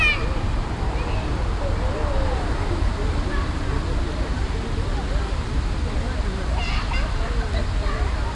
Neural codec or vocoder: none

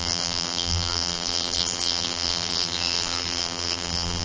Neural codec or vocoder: vocoder, BigVGAN v2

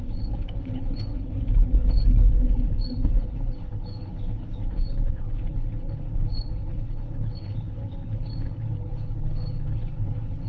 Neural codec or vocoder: codec, HILCodec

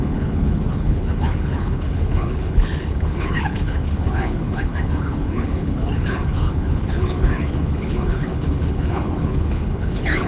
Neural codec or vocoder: codec, HILCodec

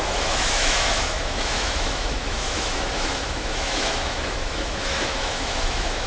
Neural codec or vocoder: autoencoder, DAC-VAE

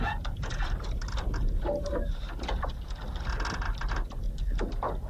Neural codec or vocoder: none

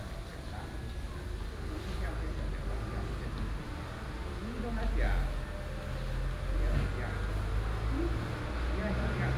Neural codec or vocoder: none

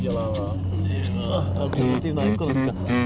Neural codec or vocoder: none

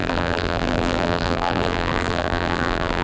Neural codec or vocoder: vocoder, BigVGAN v2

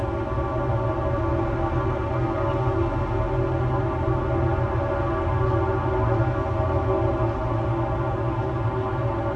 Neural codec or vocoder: none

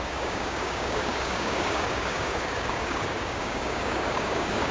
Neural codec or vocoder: codec, DAC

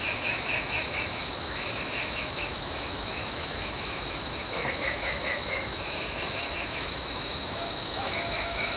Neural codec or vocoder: autoencoder, DAC-VAE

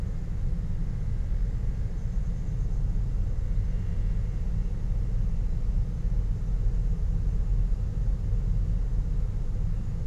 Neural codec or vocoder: none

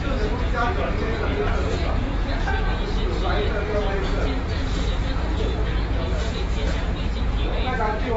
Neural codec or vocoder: vocoder, Vocos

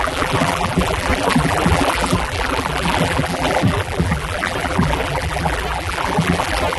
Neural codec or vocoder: vocoder, BigVGAN v2